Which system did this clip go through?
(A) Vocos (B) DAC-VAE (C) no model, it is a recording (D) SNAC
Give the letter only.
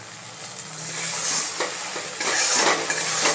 C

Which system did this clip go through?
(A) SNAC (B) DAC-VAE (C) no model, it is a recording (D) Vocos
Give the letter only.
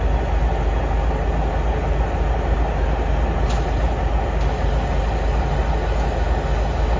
C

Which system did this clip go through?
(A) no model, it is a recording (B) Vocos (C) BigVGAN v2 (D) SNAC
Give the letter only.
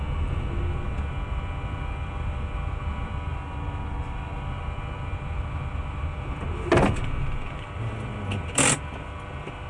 A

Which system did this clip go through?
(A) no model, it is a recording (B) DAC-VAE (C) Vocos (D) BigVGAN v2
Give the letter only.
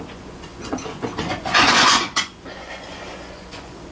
C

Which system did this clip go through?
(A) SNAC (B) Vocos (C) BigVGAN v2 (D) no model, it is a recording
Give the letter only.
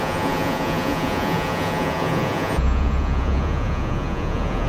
B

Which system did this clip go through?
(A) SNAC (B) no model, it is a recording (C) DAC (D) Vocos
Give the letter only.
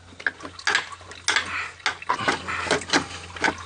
B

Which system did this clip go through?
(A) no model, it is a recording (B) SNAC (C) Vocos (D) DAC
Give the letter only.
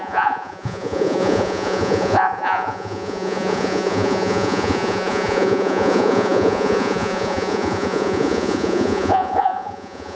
C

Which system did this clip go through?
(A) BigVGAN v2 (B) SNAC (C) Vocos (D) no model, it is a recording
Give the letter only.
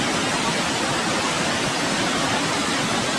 D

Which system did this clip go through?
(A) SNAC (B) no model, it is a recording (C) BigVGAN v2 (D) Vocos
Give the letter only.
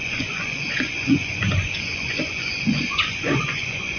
D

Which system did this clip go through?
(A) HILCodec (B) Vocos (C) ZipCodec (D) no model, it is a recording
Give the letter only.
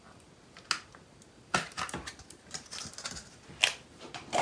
D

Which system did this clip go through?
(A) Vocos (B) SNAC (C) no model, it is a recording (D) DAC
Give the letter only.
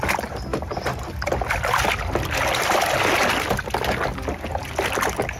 C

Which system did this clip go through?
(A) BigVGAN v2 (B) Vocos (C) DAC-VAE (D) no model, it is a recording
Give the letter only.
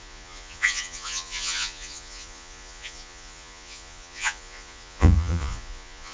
B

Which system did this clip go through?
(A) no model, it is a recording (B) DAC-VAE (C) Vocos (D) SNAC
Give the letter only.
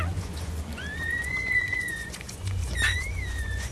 C